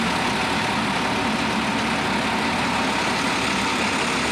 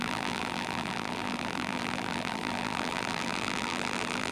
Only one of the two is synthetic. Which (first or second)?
second